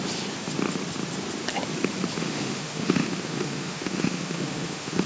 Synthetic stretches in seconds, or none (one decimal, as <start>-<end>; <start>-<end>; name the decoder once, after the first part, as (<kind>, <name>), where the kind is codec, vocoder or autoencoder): 2.2-5.1 (autoencoder, DAC-VAE)